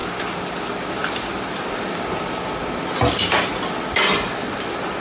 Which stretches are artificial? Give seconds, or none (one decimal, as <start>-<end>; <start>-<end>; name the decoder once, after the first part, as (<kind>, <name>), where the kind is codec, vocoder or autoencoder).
none